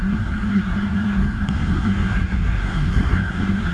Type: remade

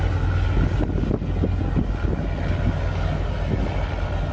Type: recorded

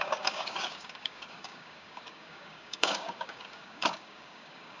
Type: remade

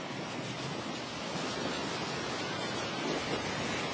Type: recorded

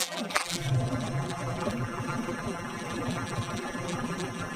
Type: remade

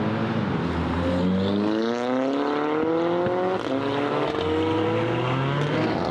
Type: recorded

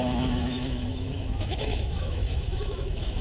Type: remade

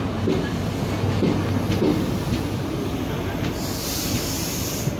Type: recorded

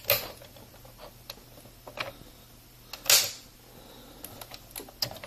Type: recorded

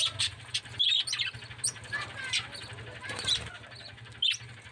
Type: recorded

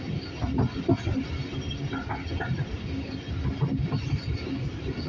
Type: recorded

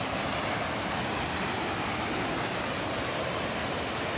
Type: recorded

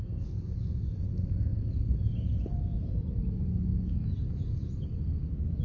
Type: recorded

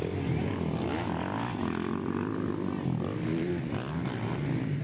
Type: recorded